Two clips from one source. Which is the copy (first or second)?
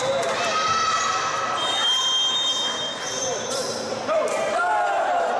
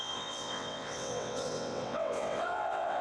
second